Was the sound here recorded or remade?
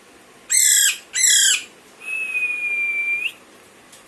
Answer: recorded